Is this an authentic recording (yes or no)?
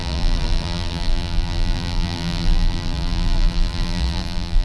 no